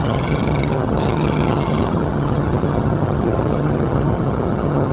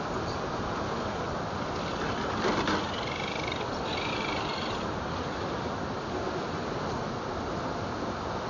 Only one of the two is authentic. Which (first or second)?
second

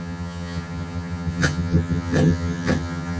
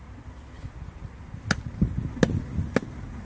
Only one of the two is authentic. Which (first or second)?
second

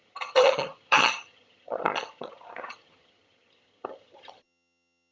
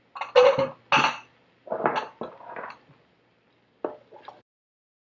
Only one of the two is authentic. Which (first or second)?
second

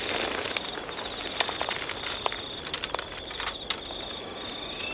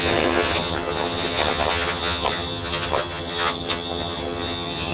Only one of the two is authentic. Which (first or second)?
first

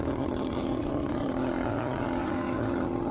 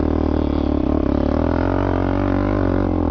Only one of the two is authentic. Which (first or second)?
second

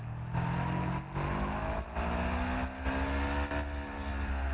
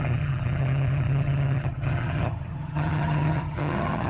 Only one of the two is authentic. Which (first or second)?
first